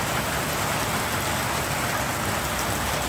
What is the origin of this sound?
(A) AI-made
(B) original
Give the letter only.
B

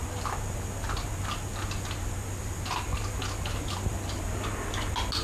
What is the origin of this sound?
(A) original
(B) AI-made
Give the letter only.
A